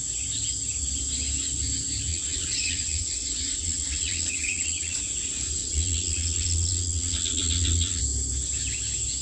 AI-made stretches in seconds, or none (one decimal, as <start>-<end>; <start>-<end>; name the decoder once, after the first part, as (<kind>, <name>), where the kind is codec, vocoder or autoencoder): 2.1-5.0 (vocoder, Vocos); 5.6-8.0